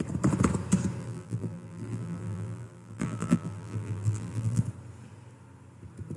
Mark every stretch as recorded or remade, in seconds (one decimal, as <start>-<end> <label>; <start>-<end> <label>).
0.0-1.0 recorded; 1.0-4.6 remade; 4.6-6.2 recorded